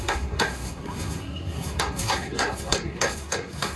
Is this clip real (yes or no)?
no